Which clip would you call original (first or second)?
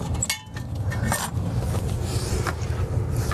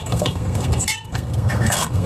first